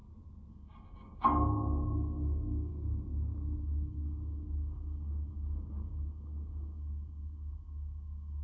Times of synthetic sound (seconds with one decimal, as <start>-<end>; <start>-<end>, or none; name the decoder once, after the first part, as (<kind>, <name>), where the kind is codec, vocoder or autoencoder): 0.5-2.7 (codec, DAC); 3.6-8.4